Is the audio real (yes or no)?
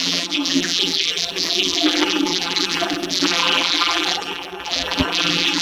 no